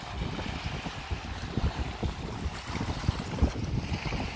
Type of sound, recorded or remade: recorded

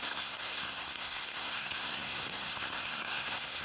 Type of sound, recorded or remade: remade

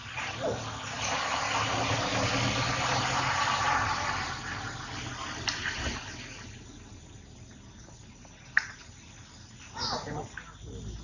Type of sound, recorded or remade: recorded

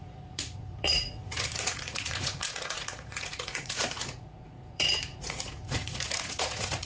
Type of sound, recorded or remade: remade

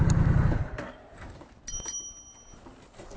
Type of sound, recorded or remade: recorded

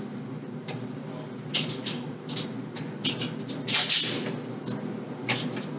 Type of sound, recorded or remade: recorded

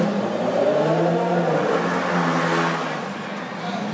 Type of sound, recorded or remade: recorded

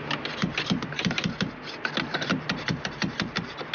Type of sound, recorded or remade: recorded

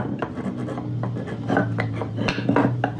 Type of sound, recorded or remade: recorded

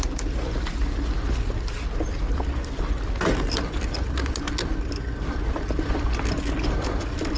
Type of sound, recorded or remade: recorded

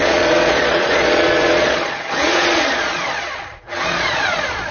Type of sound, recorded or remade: remade